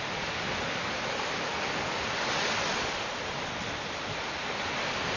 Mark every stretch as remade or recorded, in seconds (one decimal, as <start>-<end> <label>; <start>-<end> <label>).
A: 0.0-5.2 recorded